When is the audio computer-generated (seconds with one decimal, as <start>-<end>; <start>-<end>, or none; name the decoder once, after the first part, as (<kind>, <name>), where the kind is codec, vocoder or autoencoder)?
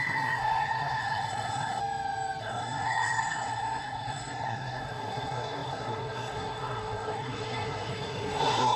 0.0-1.8 (codec, SNAC); 2.4-8.8